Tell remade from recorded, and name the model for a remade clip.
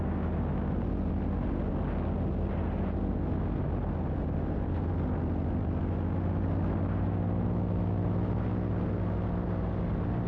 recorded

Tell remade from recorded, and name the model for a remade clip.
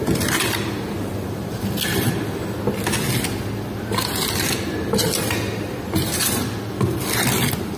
recorded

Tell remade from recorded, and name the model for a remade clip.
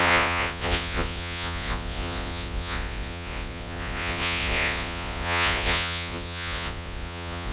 remade, vocoder, Vocos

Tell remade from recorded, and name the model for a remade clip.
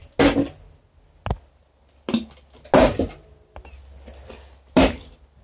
recorded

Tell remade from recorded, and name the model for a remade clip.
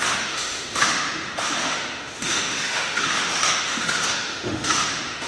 remade, autoencoder, DAC-VAE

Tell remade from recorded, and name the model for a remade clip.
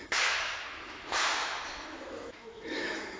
remade, autoencoder, DAC-VAE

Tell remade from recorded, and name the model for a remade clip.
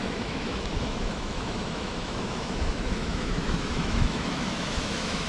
remade, autoencoder, DAC-VAE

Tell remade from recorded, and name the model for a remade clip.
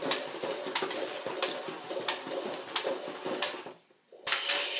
recorded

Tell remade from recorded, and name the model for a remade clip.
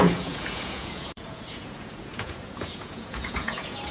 remade, vocoder, Vocos